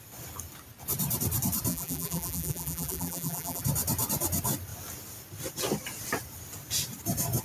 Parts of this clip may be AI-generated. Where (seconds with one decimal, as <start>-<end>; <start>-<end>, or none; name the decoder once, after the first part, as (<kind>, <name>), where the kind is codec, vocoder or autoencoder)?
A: 1.7-3.6 (vocoder, BigVGAN v2)

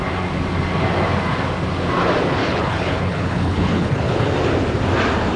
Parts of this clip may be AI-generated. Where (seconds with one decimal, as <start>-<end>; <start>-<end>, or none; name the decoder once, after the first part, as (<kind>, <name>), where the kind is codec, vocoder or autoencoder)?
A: 2.4-4.3 (codec, HILCodec)

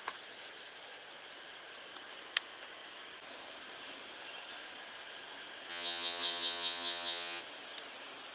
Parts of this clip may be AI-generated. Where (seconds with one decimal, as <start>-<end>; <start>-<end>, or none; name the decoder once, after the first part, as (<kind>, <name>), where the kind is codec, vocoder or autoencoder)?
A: 5.7-7.4 (vocoder, HiFi-GAN)

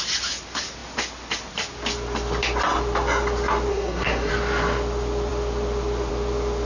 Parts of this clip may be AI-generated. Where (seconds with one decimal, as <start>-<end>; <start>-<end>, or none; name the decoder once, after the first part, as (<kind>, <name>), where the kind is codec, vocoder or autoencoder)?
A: 3.7-4.3 (codec, SNAC)

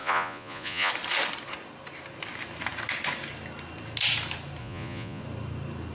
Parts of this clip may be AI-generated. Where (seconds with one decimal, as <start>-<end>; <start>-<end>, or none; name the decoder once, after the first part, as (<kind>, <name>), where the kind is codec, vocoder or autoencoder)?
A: 0.0-0.9 (vocoder, Vocos); 4.6-5.2

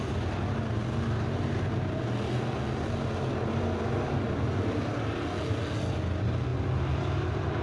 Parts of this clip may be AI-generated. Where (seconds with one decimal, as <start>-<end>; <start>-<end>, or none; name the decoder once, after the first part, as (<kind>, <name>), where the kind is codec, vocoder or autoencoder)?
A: none

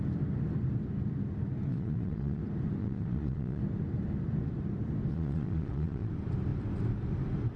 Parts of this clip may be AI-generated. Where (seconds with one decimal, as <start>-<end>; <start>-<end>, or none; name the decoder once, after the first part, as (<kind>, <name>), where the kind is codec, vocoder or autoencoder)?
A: 1.7-2.4 (vocoder, Vocos); 2.8-3.6; 5.1-6.1

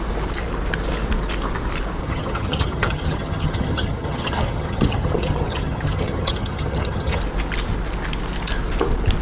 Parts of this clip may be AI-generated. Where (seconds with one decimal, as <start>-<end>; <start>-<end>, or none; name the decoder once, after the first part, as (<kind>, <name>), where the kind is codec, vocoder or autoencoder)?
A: 2.0-7.2 (vocoder, HiFi-GAN)